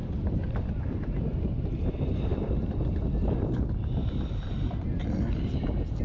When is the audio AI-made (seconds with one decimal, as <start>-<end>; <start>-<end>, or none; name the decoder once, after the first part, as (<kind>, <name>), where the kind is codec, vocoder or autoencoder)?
0.0-0.8 (vocoder, BigVGAN v2); 2.3-6.0